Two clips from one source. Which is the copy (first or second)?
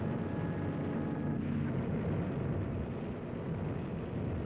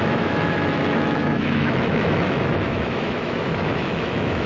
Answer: second